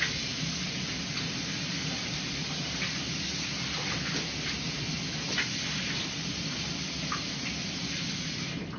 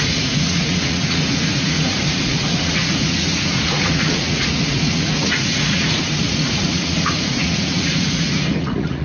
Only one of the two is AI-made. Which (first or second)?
second